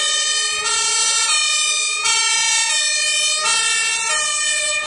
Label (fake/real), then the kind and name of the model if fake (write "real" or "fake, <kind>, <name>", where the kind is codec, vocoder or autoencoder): real